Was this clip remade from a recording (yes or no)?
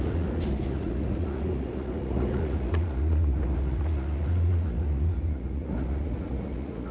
yes